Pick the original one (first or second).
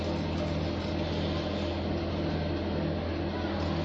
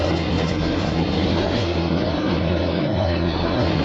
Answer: first